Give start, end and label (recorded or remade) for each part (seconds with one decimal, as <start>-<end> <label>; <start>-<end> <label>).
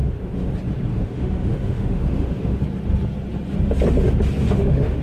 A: 0.0-0.5 remade; 0.5-0.9 recorded; 0.9-2.6 remade; 2.6-4.4 recorded; 4.4-5.0 remade